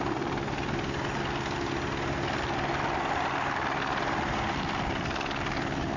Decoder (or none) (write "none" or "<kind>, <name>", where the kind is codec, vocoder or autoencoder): none